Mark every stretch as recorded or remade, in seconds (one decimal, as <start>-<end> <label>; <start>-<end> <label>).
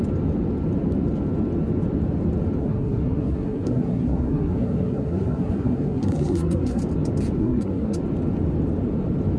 0.0-2.6 recorded; 2.6-6.8 remade; 6.8-7.4 recorded; 7.4-8.0 remade; 8.0-9.4 recorded